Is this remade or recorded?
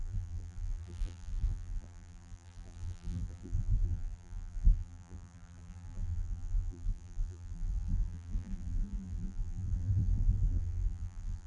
remade